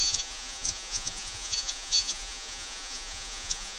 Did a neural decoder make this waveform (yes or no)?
yes